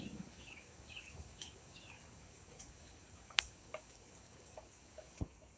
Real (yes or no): no